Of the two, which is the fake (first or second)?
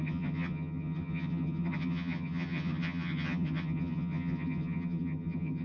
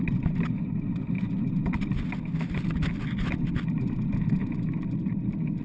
first